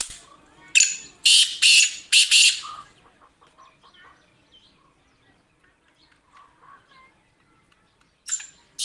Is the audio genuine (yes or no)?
yes